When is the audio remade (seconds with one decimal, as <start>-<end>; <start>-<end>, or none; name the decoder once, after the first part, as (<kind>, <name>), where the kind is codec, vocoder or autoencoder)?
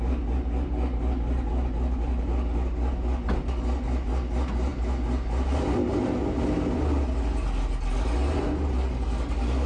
none